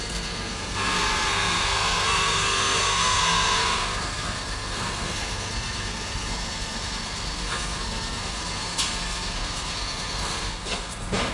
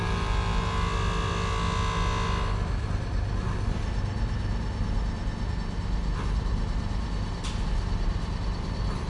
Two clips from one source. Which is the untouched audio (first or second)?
second